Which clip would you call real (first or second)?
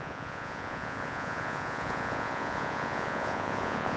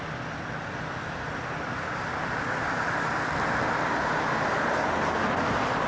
second